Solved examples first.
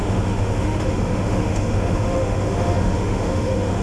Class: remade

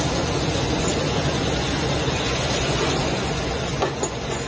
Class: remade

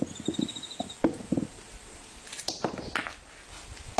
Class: recorded